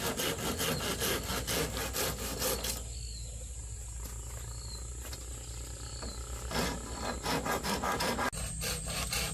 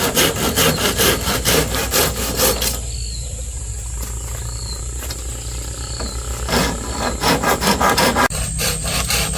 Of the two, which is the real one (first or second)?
first